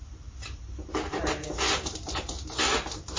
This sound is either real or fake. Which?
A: real